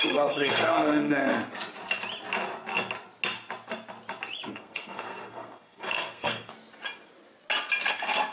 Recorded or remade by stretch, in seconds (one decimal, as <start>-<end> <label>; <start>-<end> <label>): 0.0-1.3 remade; 1.3-4.5 recorded; 4.5-6.5 remade; 6.5-7.9 recorded; 7.9-8.3 remade